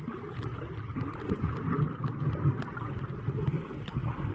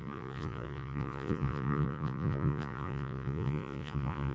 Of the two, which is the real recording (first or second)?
first